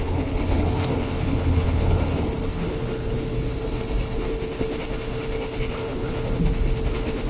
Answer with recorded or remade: remade